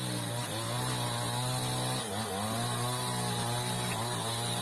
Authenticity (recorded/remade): recorded